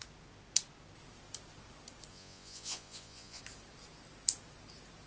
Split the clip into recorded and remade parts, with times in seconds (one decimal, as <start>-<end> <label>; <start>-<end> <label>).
0.0-2.1 recorded; 2.1-3.4 remade; 3.4-5.1 recorded